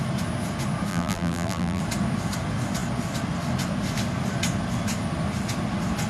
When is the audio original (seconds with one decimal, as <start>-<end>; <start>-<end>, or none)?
0.0-0.9; 1.8-6.1